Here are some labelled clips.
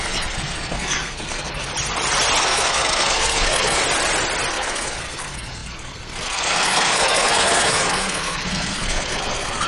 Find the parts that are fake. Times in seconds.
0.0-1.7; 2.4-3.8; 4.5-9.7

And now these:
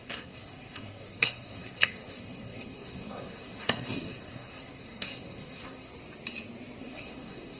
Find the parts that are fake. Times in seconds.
0.0-5.9; 6.8-7.6

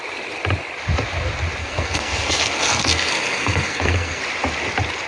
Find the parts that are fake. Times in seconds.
1.6-4.2

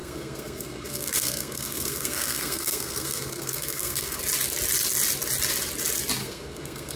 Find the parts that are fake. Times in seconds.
0.0-4.2; 6.2-7.0

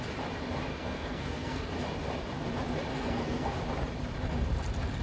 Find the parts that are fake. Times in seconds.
0.7-1.6; 2.9-3.5

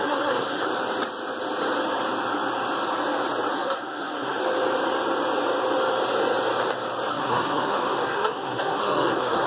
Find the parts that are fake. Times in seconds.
0.0-0.7; 3.5-4.4; 7.1-9.5

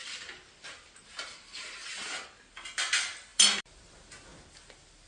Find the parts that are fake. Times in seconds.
none

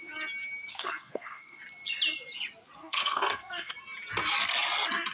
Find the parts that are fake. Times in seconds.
0.7-1.6; 2.8-3.7